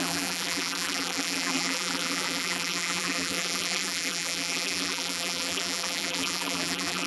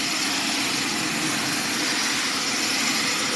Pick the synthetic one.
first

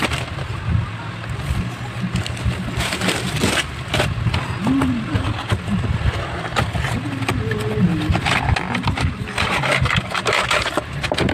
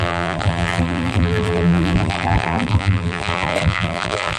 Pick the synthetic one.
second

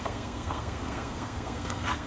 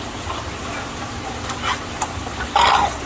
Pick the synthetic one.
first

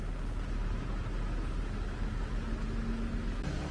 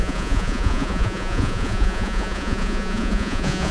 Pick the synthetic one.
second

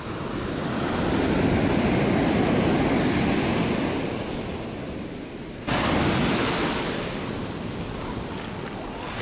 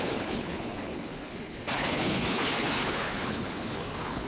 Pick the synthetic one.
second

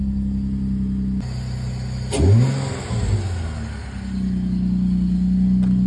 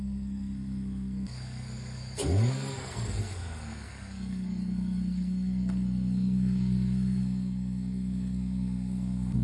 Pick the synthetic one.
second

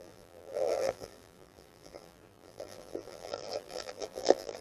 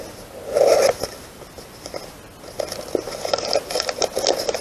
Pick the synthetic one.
first